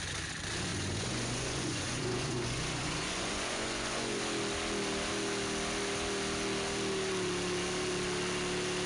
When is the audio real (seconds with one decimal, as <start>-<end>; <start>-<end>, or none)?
0.0-0.7; 4.2-8.9